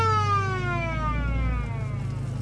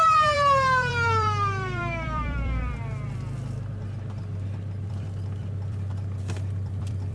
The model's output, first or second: second